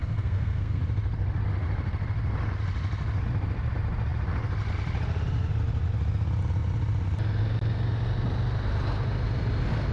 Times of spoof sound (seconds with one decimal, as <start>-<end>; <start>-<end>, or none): 0.0-0.8